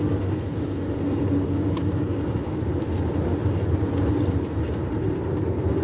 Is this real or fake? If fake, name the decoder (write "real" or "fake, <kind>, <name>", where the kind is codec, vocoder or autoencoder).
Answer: fake, vocoder, BigVGAN v2